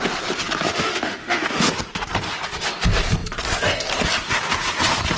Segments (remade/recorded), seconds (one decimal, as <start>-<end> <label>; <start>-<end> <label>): 0.0-0.7 recorded; 0.7-1.7 remade; 1.7-5.2 recorded